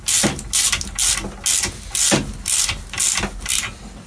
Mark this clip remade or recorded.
recorded